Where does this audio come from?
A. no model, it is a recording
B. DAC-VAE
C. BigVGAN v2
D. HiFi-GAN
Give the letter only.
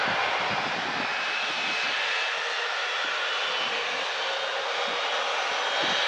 A